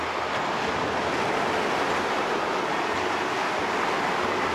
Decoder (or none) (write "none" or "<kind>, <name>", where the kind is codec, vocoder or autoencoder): none